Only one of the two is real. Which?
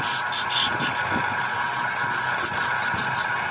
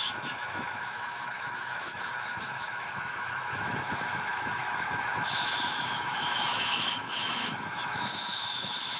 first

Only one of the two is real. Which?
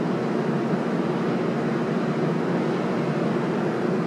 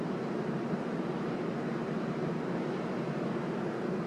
first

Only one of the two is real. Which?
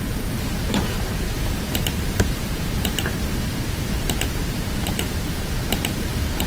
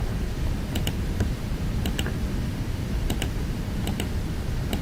second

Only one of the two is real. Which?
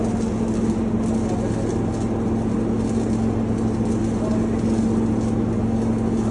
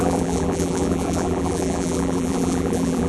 first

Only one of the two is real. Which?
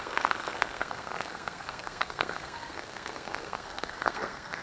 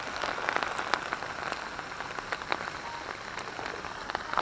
second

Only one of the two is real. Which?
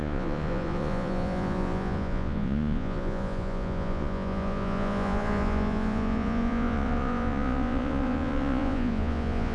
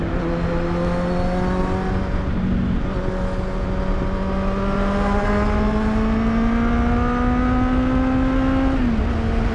second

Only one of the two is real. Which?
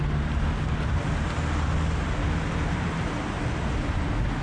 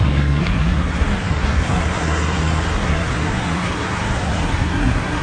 first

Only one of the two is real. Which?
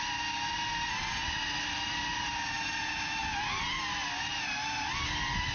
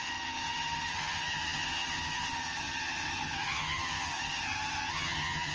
first